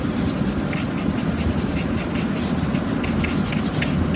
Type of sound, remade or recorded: recorded